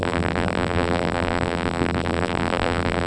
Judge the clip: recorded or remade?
remade